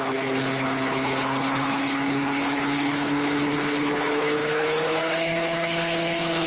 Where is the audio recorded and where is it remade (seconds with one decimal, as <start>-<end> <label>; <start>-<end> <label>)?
0.0-6.5 remade